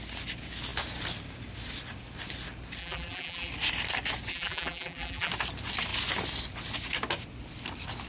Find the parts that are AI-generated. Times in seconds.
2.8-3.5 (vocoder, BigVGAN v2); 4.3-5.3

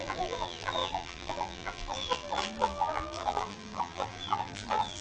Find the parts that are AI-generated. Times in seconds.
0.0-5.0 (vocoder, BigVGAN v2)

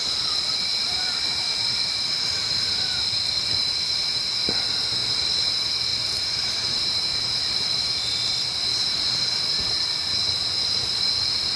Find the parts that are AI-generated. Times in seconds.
0.7-4.2 (vocoder, BigVGAN v2); 5.0-5.5; 5.9-10.1